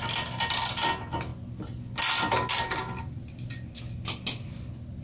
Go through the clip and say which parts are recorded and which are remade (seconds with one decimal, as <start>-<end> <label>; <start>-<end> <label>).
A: 0.0-5.0 recorded